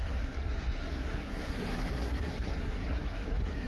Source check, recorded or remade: remade